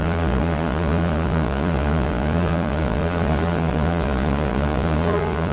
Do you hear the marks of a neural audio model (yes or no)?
yes